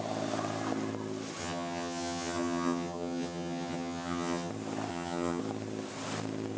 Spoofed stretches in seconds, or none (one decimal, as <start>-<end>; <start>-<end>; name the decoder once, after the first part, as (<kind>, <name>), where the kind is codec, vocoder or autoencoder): 1.4-4.5 (vocoder, HiFi-GAN); 4.9-5.4